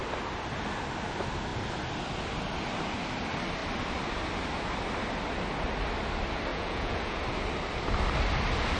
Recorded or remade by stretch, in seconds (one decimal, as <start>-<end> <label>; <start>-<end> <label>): 0.0-6.5 recorded; 6.5-7.2 remade; 7.2-8.8 recorded